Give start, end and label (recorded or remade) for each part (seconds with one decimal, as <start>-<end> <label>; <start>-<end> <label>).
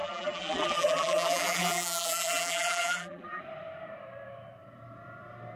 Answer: 0.0-3.4 remade; 3.4-5.6 recorded